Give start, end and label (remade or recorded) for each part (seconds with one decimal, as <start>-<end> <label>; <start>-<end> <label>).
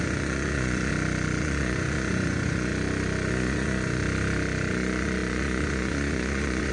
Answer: 0.0-0.9 remade; 0.9-1.4 recorded; 1.4-2.7 remade; 2.7-3.3 recorded; 3.3-4.0 remade; 4.0-4.7 recorded; 4.7-6.7 remade